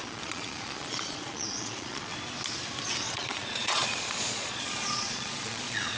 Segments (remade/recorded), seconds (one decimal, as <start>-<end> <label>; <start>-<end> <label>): 0.0-2.1 remade; 2.1-3.0 recorded; 3.0-6.0 remade